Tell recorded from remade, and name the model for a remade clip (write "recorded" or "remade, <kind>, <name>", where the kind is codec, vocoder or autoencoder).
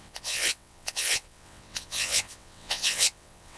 remade, vocoder, WaveNeXt